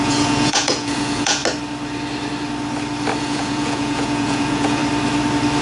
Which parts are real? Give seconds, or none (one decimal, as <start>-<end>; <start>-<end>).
1.4-3.2; 4.8-5.6